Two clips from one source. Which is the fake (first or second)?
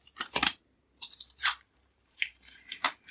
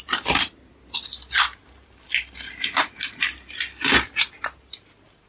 first